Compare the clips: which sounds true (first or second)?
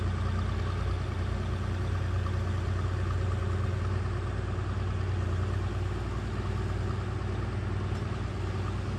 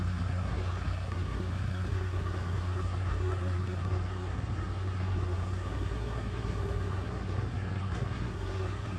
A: first